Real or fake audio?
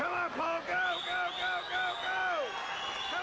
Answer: real